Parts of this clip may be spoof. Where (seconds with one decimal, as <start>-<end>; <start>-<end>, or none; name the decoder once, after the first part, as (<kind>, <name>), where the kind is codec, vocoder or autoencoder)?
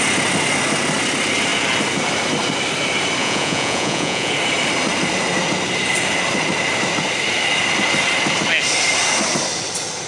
3.2-4.3 (vocoder, Vocos)